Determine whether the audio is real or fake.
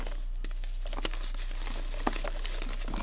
real